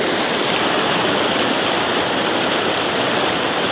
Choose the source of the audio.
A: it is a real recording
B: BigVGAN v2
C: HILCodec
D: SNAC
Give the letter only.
A